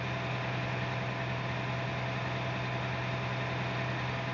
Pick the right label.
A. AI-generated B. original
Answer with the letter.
B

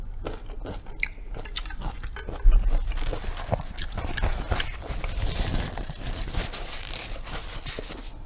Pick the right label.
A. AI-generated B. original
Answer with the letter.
B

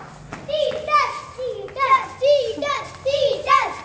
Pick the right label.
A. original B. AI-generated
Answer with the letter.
A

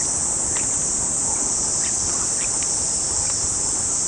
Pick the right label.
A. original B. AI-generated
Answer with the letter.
A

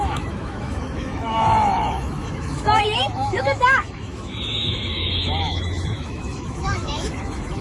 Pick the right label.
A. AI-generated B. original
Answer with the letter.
A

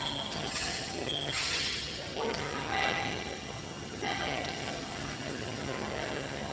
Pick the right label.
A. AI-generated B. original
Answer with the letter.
A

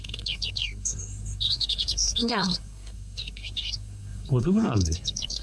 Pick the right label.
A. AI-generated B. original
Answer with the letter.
A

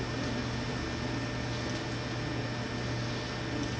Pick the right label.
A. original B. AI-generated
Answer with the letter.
A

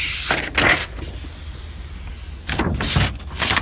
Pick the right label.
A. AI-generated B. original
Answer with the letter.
B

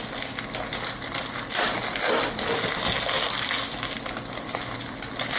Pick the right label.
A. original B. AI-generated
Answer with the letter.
A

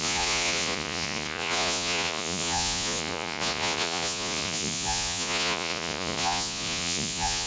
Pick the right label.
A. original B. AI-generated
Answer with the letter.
B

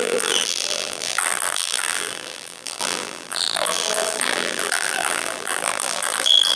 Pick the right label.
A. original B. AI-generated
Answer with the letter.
B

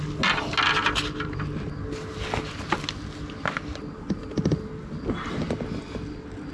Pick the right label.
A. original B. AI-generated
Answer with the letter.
A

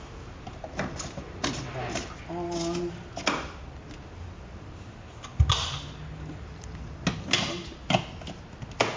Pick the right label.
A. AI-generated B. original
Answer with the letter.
B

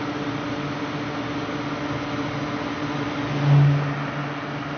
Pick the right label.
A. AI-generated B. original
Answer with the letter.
B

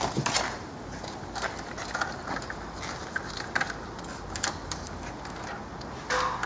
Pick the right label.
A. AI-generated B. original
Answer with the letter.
B